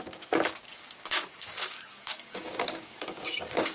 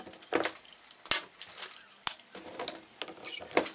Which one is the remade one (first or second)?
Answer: first